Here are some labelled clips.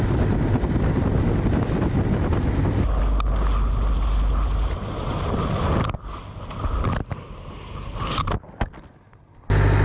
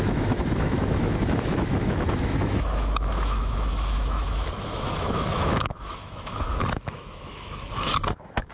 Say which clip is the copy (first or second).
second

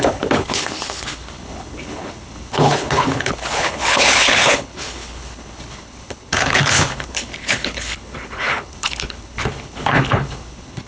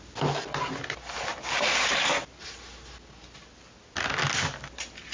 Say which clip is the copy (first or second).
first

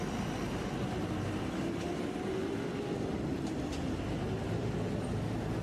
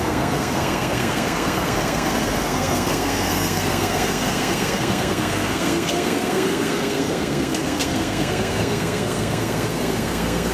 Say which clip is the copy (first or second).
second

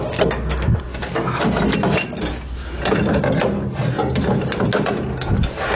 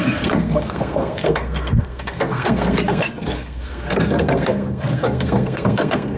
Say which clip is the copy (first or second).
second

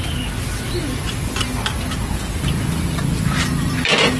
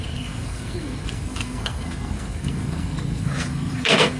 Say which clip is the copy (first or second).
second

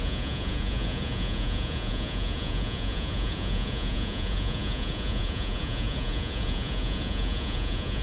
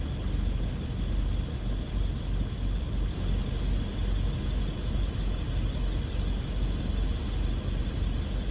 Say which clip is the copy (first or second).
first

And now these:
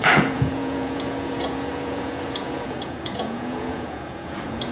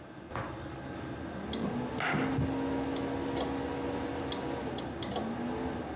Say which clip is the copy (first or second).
first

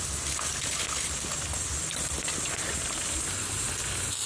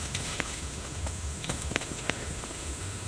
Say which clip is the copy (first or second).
second